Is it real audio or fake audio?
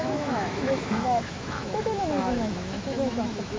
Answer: fake